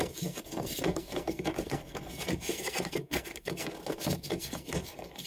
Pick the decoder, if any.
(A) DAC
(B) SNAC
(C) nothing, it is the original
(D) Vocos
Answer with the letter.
B